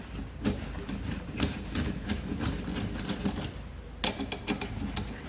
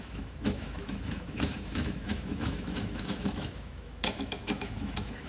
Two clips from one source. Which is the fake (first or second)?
second